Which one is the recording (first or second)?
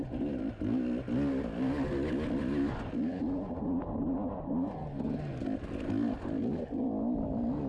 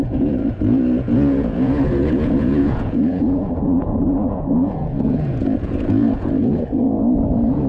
first